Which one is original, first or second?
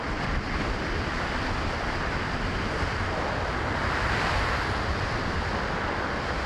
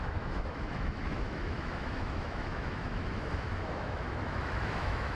first